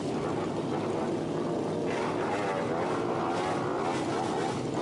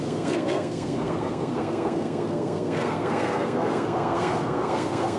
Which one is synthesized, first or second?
second